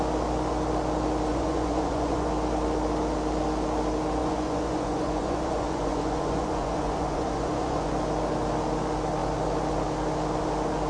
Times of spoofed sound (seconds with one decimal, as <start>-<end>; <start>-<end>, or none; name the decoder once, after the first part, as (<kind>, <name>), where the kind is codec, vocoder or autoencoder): 1.3-2.3 (vocoder, Vocos); 4.2-7.9